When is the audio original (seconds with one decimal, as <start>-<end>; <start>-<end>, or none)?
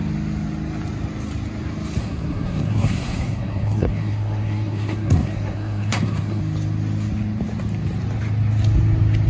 0.0-2.0; 6.4-9.3